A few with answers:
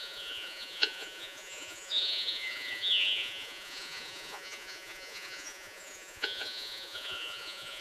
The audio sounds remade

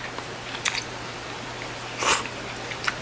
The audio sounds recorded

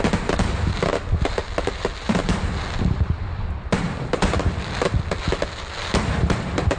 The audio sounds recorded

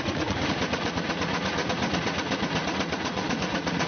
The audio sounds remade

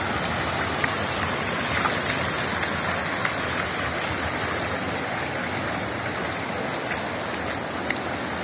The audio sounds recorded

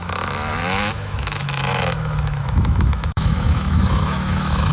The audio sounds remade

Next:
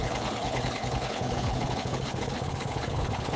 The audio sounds remade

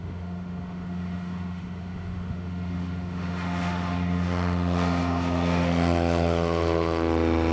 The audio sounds remade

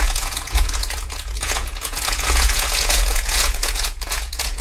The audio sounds remade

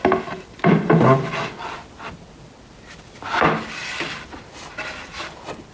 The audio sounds recorded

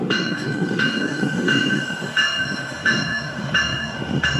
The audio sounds remade